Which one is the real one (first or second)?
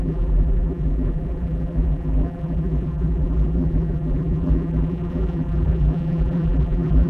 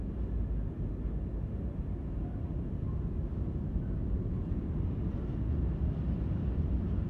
second